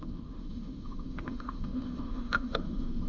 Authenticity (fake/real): fake